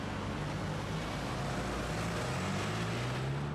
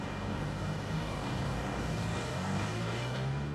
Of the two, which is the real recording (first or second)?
first